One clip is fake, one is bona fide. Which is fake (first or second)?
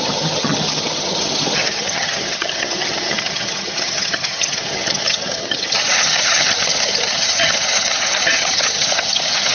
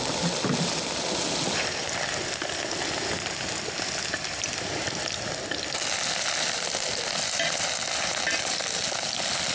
first